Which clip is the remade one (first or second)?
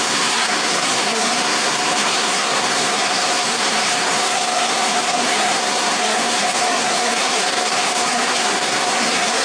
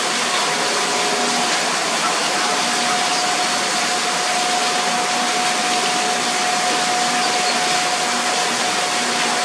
first